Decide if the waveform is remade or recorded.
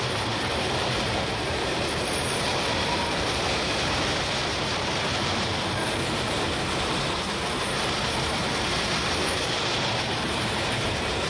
remade